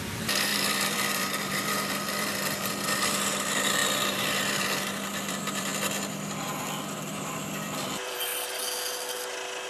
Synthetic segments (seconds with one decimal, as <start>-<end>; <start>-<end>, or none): 0.0-3.8; 4.3-5.7; 7.1-8.3